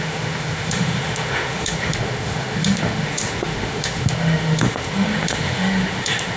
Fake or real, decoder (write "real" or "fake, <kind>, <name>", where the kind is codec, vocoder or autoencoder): fake, autoencoder, DAC-VAE